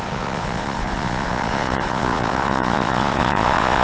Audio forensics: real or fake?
fake